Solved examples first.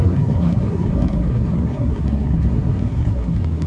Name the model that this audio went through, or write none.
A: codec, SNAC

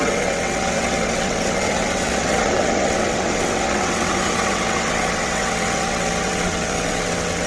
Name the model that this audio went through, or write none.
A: vocoder, WaveNeXt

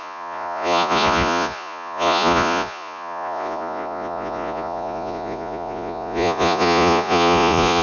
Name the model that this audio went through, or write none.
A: vocoder, Vocos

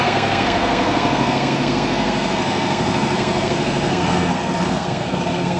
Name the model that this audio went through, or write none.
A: codec, SNAC